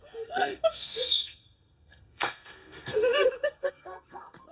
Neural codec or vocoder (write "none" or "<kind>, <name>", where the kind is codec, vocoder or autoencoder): codec, SNAC